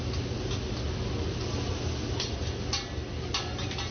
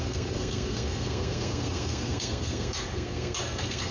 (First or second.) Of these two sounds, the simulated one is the second